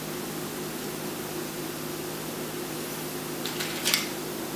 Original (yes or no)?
yes